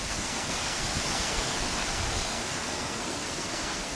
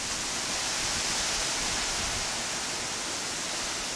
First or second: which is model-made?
first